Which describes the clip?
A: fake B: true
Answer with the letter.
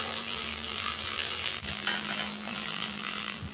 A